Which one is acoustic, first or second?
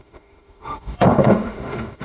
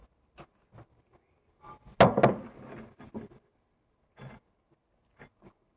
second